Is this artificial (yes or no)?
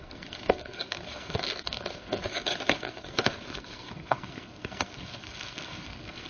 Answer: yes